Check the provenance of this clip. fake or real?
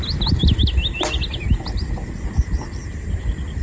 real